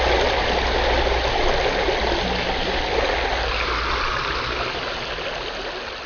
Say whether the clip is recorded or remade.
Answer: recorded